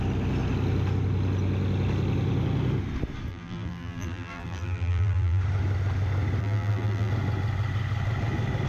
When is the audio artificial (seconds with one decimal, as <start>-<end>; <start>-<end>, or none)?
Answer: 3.3-5.4; 6.4-7.1